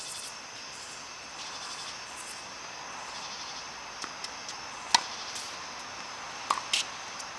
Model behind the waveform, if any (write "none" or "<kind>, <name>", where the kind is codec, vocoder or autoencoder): none